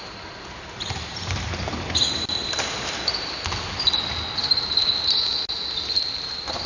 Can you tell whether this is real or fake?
real